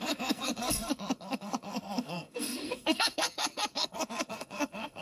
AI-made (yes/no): yes